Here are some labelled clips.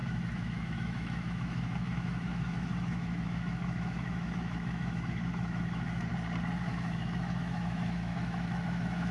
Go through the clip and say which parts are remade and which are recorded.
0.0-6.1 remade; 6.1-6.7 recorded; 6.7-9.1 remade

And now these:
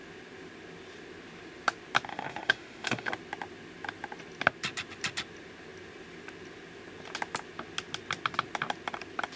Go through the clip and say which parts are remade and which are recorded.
0.0-2.1 recorded; 2.1-3.1 remade; 3.1-9.4 recorded

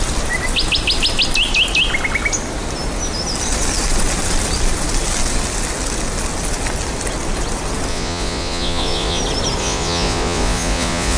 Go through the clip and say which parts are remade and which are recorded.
0.0-7.9 recorded; 7.9-9.2 remade; 9.2-9.6 recorded; 9.6-11.2 remade

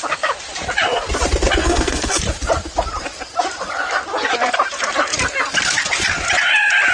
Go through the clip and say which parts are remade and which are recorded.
0.0-1.6 recorded; 1.6-2.2 remade; 2.2-6.9 recorded